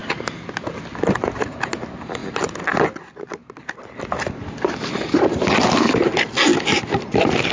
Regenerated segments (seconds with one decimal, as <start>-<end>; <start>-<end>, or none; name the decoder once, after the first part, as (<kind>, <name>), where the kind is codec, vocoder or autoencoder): none